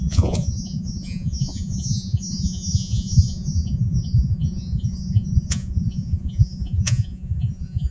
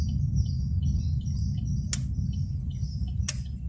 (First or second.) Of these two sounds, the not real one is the first